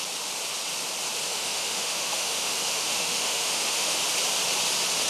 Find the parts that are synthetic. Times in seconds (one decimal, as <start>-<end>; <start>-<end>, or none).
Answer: 1.3-4.0